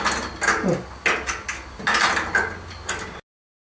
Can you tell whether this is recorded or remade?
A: recorded